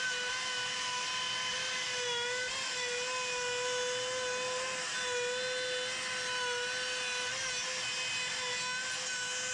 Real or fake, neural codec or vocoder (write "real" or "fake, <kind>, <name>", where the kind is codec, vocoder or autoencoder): real